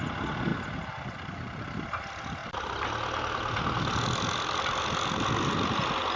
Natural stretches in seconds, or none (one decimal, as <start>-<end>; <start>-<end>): 0.0-6.2